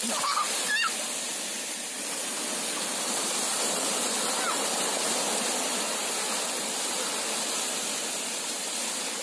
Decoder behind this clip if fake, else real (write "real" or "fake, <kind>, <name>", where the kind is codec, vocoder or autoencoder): real